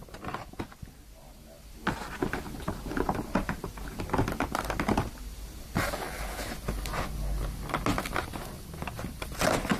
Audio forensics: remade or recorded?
recorded